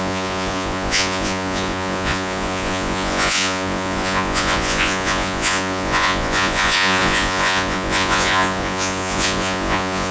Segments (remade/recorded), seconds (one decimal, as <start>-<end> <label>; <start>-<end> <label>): 0.0-10.1 remade